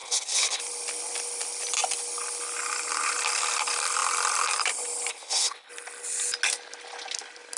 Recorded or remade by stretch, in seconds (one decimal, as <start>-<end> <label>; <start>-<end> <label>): 0.0-0.6 remade; 0.6-5.1 recorded; 5.1-5.7 remade; 5.7-7.6 recorded